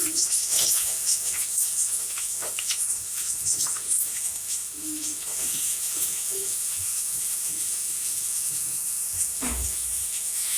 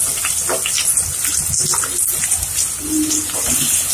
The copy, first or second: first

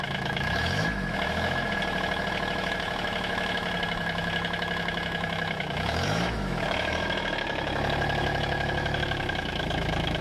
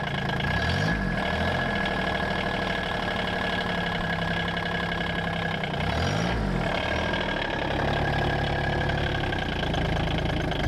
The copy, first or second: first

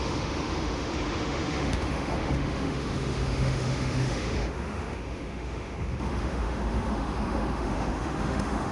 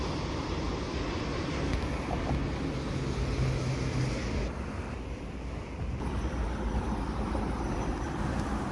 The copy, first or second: first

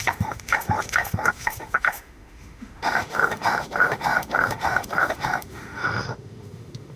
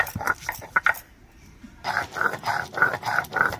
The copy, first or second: first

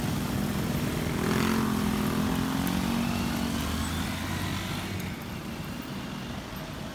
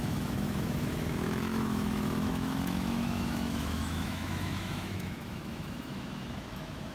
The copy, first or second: second